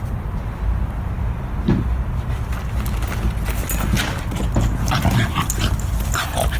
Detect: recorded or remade recorded